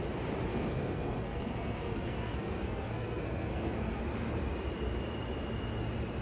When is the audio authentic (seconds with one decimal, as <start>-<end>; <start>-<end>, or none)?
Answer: 0.0-0.5; 4.0-6.2